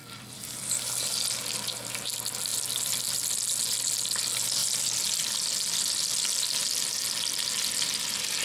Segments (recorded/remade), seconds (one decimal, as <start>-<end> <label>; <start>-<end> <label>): 0.0-1.0 remade; 1.0-2.5 recorded; 2.5-3.1 remade; 3.1-8.4 recorded